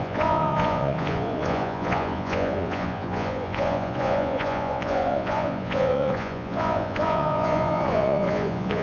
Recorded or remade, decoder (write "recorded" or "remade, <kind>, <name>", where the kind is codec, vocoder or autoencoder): remade, vocoder, Vocos